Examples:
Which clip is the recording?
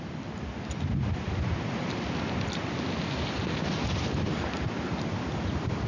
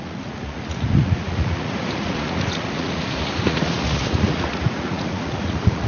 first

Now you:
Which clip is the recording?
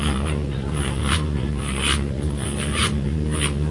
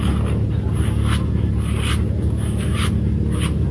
second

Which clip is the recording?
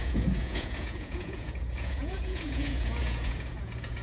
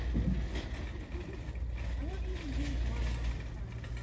second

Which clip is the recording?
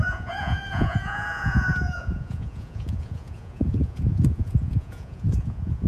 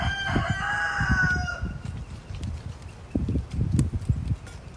second